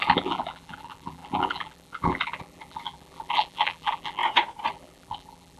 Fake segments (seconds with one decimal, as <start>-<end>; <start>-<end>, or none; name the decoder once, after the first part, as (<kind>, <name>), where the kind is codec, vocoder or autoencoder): 0.0-4.2 (vocoder, BigVGAN v2); 4.7-5.6

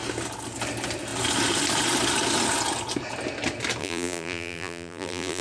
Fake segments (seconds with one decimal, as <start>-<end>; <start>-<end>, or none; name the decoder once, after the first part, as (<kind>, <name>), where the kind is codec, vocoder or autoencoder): 3.8-5.4 (vocoder, BigVGAN v2)

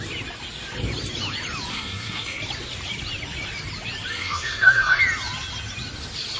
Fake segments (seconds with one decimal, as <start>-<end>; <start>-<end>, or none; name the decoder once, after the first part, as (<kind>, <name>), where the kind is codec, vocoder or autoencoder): 1.7-2.4 (codec, SNAC); 4.1-5.0

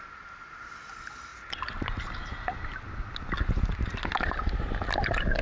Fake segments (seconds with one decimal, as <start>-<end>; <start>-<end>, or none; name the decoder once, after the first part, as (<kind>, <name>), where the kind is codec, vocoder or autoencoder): none